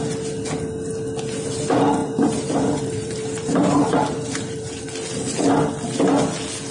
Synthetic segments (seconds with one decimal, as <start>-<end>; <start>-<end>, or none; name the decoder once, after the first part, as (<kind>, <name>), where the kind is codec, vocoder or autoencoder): 2.0-4.8 (vocoder, BigVGAN v2)